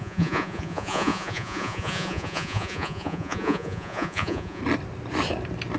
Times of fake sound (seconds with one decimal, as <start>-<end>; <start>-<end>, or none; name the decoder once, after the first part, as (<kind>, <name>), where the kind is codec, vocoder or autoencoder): 0.0-4.6 (vocoder, Vocos)